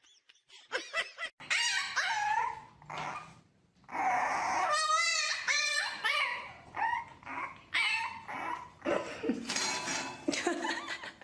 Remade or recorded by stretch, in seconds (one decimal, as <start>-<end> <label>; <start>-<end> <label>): 0.0-5.1 recorded; 5.1-7.0 remade; 7.0-11.2 recorded